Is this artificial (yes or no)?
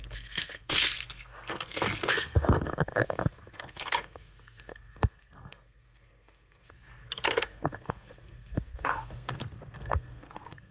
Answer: yes